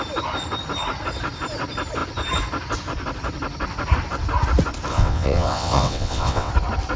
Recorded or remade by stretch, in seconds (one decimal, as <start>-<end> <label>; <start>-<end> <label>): 0.0-4.9 recorded; 4.9-6.5 remade; 6.5-7.0 recorded